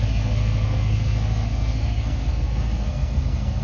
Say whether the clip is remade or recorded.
remade